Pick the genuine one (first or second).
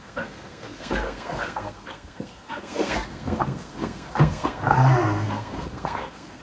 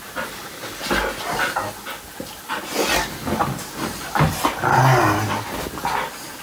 second